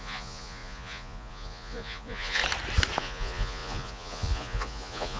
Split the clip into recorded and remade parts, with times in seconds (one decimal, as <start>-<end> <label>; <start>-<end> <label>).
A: 0.0-2.4 remade; 2.4-3.0 recorded; 3.0-5.2 remade